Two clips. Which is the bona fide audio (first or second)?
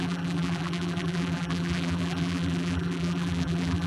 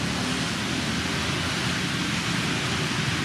second